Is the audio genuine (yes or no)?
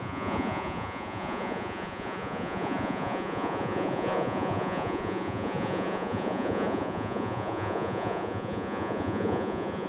no